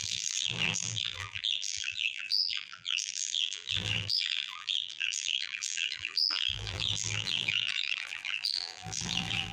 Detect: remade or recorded remade